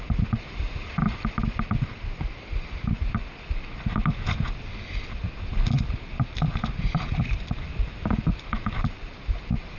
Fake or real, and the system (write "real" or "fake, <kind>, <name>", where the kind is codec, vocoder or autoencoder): real